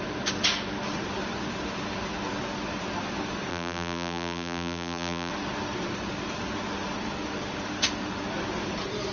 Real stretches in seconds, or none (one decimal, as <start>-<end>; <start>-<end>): 0.0-3.5; 5.3-9.1